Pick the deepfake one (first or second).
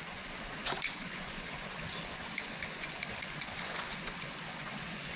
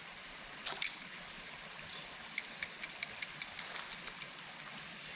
first